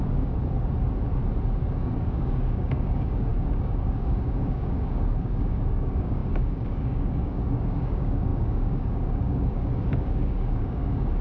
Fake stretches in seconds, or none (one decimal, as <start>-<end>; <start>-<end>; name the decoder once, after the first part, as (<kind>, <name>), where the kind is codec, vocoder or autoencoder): 0.0-0.4 (codec, DAC); 1.7-11.2